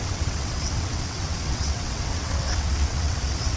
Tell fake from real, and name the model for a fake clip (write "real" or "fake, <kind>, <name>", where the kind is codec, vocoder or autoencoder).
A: fake, vocoder, WaveNeXt